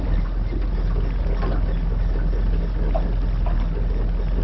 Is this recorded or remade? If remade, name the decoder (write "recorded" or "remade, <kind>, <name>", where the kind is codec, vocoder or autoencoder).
recorded